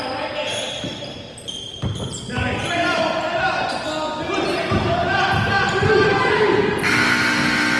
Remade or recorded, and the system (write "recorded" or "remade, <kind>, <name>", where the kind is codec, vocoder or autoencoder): recorded